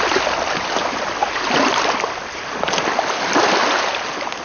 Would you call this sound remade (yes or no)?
no